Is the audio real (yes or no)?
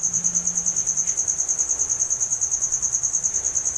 yes